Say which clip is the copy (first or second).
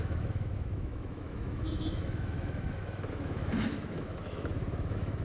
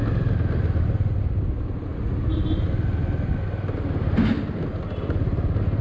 first